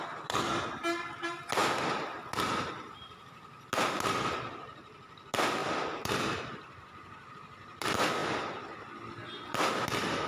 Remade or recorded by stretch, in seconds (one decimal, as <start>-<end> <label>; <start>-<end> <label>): 0.0-5.6 recorded; 5.6-7.3 remade; 7.3-10.3 recorded